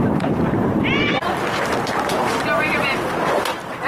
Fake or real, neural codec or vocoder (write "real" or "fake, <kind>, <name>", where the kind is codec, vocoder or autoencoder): fake, vocoder, BigVGAN v2